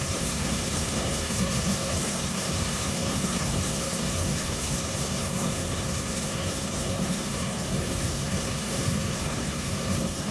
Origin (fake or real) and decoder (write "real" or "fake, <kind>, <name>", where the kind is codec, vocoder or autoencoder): fake, codec, SNAC